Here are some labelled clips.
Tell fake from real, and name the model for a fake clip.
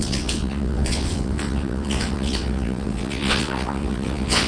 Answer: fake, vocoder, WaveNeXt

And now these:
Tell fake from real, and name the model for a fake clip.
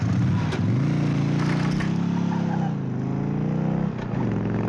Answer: real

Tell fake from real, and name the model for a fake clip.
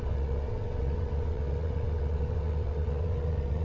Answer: fake, vocoder, WaveNeXt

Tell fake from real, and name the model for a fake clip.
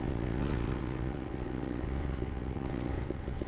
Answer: fake, vocoder, WaveNeXt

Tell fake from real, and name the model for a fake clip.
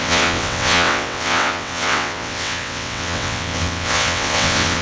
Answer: fake, vocoder, WaveNeXt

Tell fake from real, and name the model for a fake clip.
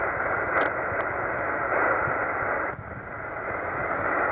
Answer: real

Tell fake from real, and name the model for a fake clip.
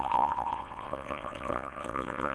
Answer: fake, vocoder, WaveNeXt